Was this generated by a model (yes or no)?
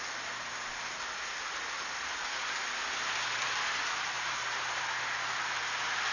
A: no